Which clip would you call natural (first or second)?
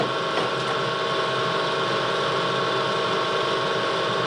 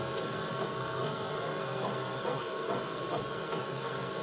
first